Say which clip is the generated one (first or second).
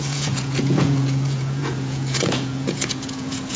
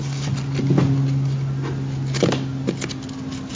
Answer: first